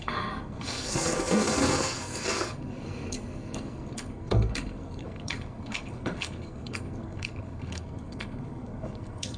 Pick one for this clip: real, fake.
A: fake